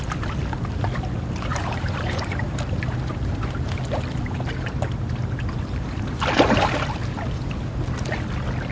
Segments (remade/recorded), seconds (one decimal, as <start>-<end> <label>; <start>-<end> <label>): 0.0-1.5 recorded; 1.5-2.5 remade; 2.5-8.7 recorded